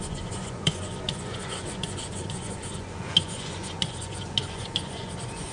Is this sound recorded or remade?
remade